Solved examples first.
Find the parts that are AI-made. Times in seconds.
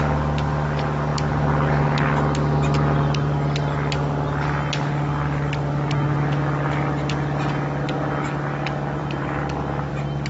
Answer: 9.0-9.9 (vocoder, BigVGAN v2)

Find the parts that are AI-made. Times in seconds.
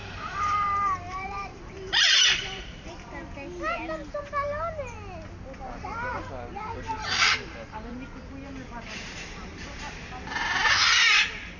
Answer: 0.0-2.9 (vocoder, BigVGAN v2)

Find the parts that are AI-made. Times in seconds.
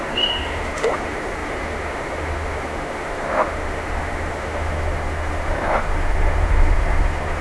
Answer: 0.0-7.4 (autoencoder, DAC-VAE)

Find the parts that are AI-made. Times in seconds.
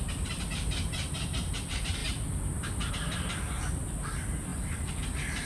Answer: 0.0-5.5 (vocoder, BigVGAN v2)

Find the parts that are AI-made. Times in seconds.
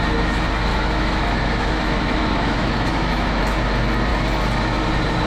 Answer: 0.7-3.4 (autoencoder, DAC-VAE)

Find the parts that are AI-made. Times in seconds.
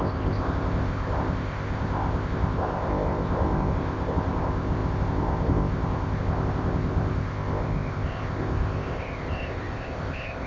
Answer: 0.0-10.5 (codec, ZipCodec)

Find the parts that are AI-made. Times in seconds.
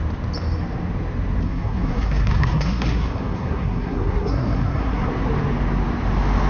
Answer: 1.4-5.1 (codec, SNAC)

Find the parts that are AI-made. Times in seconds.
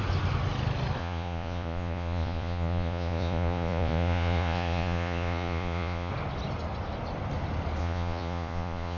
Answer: 1.0-6.1 (vocoder, Vocos); 7.8-9.0